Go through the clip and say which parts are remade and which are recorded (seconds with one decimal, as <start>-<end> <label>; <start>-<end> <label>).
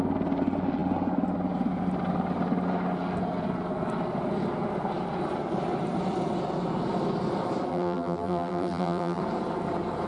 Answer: 0.0-7.7 recorded; 7.7-9.2 remade; 9.2-10.1 recorded